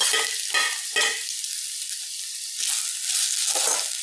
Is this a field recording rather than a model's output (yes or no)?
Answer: yes